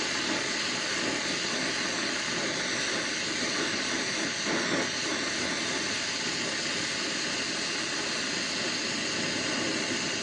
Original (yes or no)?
yes